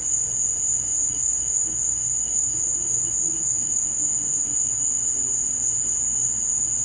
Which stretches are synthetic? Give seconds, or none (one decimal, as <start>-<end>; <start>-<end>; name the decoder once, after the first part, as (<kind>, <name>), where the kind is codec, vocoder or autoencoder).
0.9-4.9 (autoencoder, DAC-VAE)